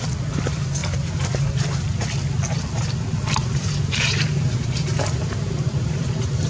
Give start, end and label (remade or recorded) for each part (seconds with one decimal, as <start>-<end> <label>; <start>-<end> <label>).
0.0-3.4 recorded; 3.4-6.1 remade; 6.1-6.5 recorded